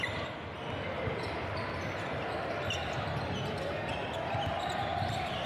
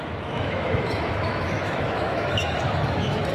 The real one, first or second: first